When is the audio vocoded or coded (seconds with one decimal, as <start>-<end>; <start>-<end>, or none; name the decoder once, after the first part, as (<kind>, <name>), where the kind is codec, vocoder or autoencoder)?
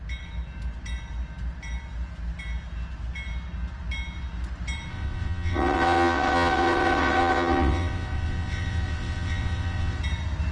4.9-10.0 (vocoder, WaveNeXt)